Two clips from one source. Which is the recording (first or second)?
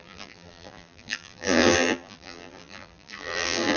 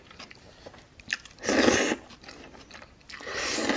second